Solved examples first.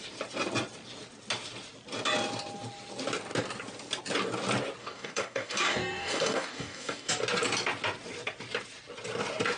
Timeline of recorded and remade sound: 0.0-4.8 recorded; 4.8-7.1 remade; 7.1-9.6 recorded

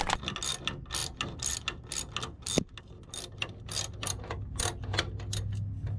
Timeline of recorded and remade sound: 0.0-6.0 recorded

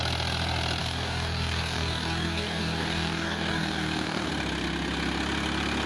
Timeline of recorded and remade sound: 0.0-0.8 recorded; 0.8-4.3 remade; 4.3-5.9 recorded

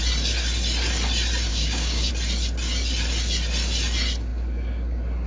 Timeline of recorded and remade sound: 0.0-1.5 recorded; 1.5-2.1 remade; 2.1-5.3 recorded